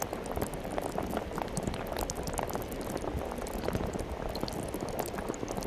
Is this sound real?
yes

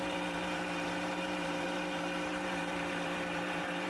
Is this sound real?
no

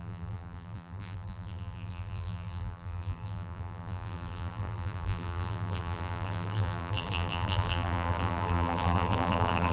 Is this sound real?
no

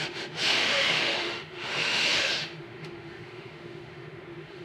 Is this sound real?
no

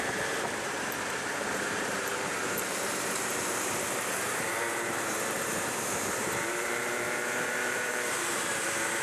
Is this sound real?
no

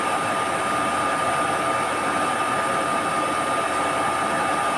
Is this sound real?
yes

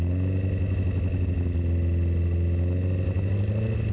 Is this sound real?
yes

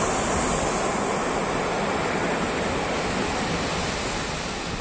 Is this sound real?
yes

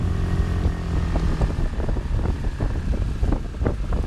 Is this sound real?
yes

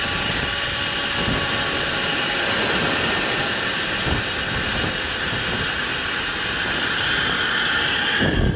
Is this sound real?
yes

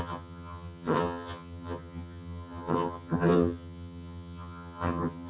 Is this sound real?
no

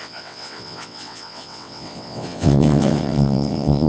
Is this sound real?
no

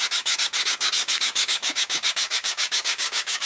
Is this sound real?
no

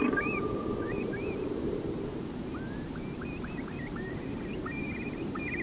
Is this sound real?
no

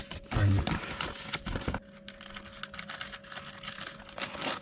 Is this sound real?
yes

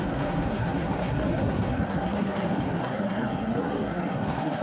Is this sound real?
no